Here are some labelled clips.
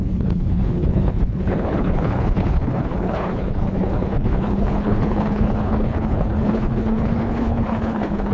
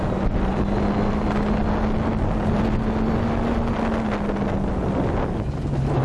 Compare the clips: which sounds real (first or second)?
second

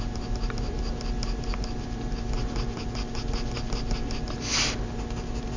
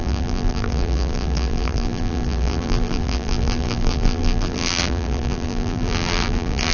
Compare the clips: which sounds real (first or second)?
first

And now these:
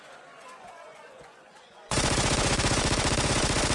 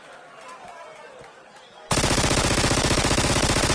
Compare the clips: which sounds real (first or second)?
second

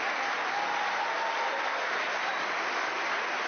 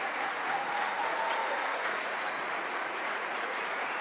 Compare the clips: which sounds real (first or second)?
first